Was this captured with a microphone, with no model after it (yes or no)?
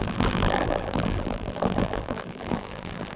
no